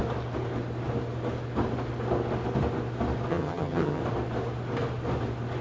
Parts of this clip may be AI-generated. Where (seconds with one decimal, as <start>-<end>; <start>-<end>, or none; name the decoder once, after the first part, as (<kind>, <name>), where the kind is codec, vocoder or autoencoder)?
3.3-4.0 (vocoder, HiFi-GAN)